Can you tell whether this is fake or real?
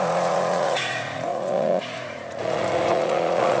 fake